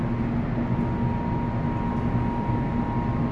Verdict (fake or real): real